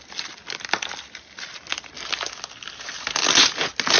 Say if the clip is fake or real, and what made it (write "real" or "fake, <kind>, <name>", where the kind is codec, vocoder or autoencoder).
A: real